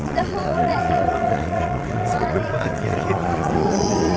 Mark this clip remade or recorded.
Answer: remade